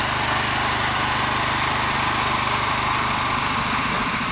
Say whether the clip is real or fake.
fake